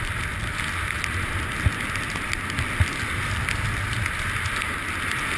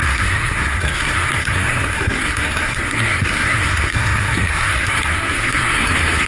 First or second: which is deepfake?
second